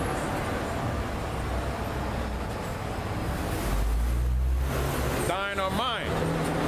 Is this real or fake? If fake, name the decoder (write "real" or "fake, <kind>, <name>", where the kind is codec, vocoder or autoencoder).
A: real